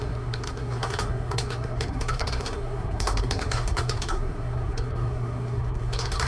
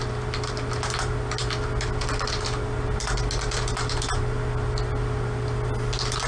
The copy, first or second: first